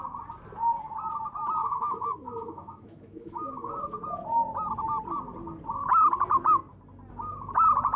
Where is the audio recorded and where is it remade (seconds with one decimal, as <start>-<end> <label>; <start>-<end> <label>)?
0.0-1.6 recorded; 1.6-3.8 remade; 3.8-8.0 recorded